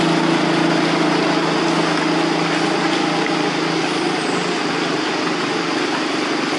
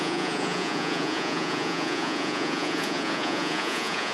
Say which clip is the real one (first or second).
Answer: first